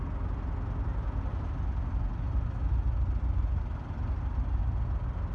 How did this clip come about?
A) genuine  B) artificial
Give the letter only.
A